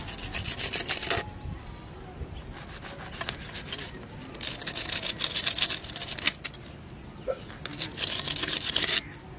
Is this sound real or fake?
real